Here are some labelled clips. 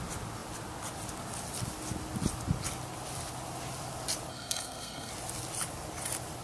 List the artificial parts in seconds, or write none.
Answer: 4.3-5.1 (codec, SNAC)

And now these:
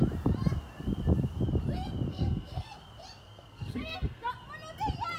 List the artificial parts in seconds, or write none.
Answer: 2.1-2.7 (codec, SNAC); 3.2-4.3

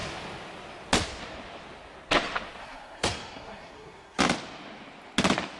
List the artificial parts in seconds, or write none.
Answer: 2.6-4.2 (codec, SNAC)

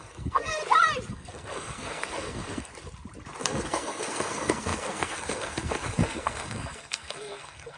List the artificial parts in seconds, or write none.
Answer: 0.0-0.6 (codec, SNAC); 1.1-2.7; 3.4-7.8

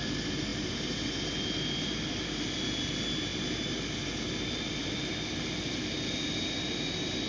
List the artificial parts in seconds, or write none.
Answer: none

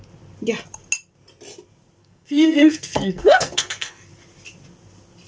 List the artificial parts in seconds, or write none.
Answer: 2.0-4.1 (codec, SNAC)

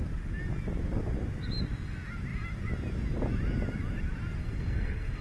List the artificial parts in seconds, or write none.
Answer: 4.4-5.2 (codec, SNAC)